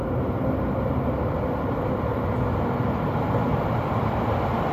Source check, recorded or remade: recorded